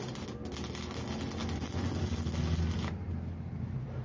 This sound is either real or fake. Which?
real